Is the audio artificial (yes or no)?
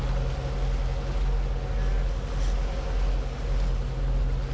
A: no